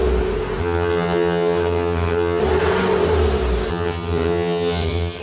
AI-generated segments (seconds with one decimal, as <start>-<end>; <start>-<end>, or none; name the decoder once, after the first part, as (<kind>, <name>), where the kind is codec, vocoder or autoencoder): 0.6-2.4 (vocoder, HiFi-GAN); 3.7-5.2